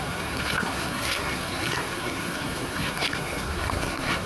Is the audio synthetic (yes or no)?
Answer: yes